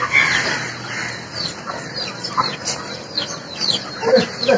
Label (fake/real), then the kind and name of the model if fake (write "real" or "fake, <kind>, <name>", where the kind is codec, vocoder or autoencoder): real